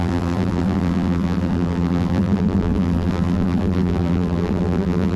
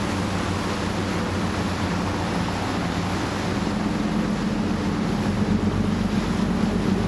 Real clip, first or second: second